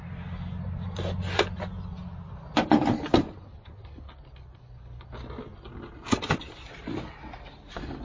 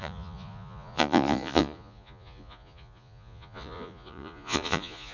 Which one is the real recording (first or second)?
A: first